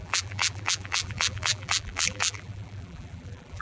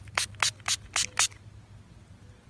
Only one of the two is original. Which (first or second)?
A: second